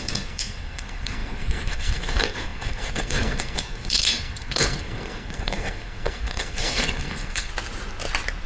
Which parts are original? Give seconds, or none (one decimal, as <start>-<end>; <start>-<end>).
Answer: 7.5-8.5